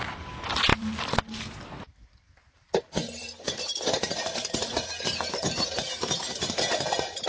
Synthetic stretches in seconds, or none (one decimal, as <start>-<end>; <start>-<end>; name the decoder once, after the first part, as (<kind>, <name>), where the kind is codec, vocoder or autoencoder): none